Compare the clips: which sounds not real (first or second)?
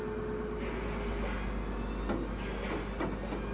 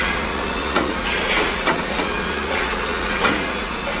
second